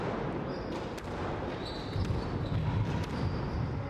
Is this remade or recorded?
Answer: recorded